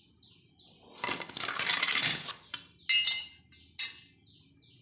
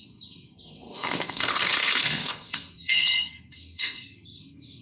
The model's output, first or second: second